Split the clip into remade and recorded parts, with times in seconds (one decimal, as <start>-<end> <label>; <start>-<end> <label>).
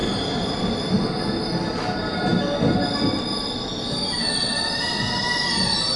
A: 0.0-6.0 recorded